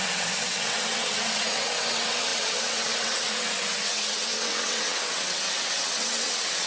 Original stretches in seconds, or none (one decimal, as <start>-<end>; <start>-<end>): none